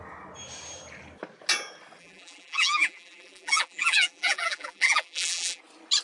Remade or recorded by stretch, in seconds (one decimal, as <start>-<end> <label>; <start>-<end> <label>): 0.0-2.0 recorded; 2.0-5.6 remade; 5.6-6.0 recorded